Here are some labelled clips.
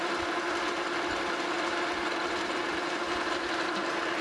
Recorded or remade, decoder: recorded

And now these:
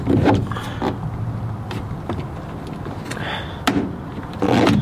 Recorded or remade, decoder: recorded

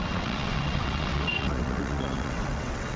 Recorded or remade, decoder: remade, vocoder, WaveNeXt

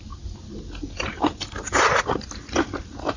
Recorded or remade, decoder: recorded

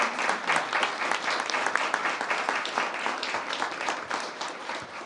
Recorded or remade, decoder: recorded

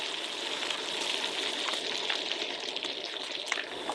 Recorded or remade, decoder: recorded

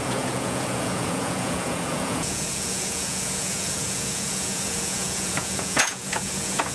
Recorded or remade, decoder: remade, vocoder, Vocos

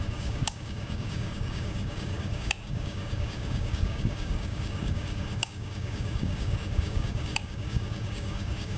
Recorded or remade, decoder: remade, codec, DAC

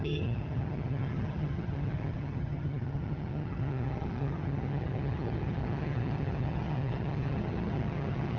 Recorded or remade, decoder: remade, vocoder, HiFi-GAN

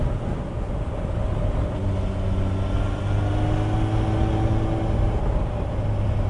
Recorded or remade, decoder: recorded